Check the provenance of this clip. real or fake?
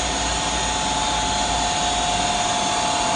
real